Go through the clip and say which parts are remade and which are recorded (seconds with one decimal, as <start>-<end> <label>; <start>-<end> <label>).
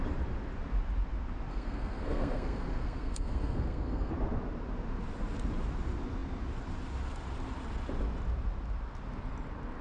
0.0-1.5 recorded; 1.5-4.1 remade; 4.1-9.8 recorded